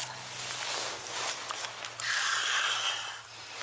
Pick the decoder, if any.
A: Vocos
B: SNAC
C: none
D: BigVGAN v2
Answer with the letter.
C